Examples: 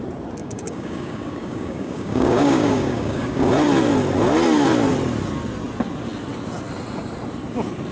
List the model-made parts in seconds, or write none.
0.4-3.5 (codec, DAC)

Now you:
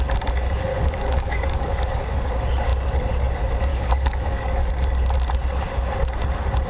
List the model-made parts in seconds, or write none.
0.7-2.3 (codec, DAC); 3.7-4.7

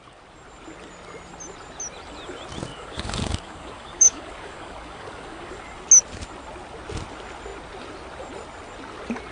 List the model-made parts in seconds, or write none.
2.7-5.5 (codec, DAC)

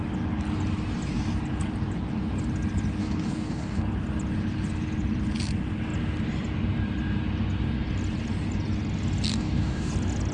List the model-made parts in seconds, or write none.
3.0-3.8 (codec, DAC); 9.3-9.9